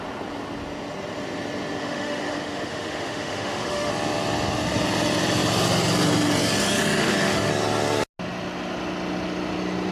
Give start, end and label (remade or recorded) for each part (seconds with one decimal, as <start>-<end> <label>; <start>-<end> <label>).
0.0-1.8 recorded; 1.8-3.9 remade; 3.9-7.0 recorded; 7.0-7.5 remade; 7.5-9.9 recorded